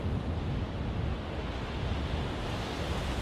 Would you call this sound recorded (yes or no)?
yes